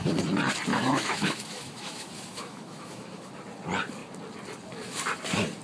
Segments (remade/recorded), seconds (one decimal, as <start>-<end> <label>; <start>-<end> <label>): 0.0-0.7 recorded; 0.7-3.3 remade; 3.3-5.6 recorded